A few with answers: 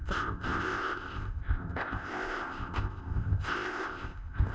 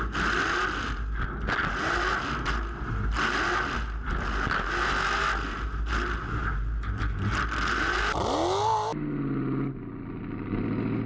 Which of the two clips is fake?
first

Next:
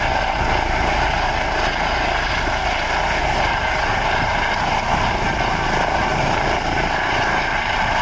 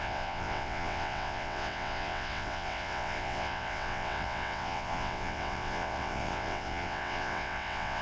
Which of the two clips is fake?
second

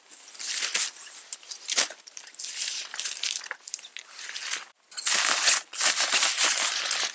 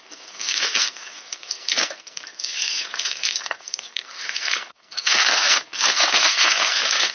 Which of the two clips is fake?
second